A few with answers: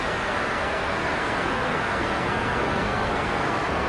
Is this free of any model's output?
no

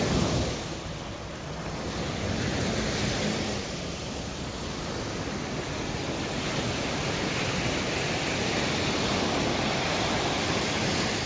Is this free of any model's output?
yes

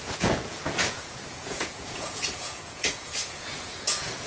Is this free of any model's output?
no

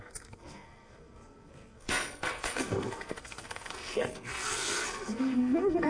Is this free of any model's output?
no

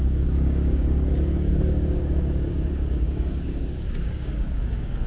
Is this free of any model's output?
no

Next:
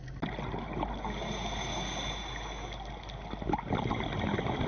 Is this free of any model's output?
yes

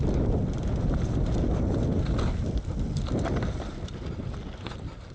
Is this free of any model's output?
yes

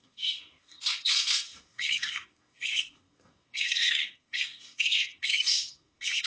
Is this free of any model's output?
no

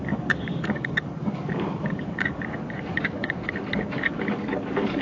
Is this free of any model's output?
no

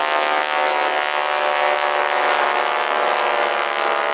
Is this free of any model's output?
yes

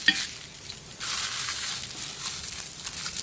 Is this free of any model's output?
yes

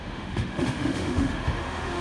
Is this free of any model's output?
no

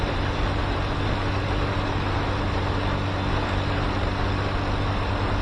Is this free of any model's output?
yes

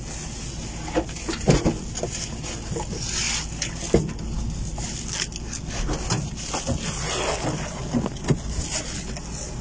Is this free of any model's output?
yes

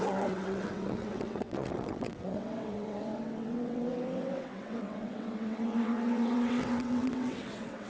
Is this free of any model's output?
no